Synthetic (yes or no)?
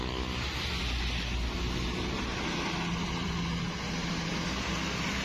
no